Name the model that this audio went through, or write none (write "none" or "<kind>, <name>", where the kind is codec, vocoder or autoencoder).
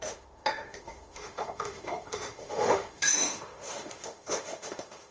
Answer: autoencoder, DAC-VAE